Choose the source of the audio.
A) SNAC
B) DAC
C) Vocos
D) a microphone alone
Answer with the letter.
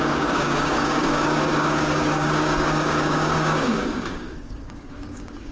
B